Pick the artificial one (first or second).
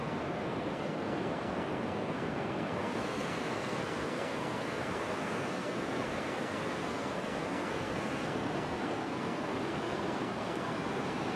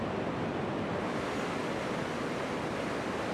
first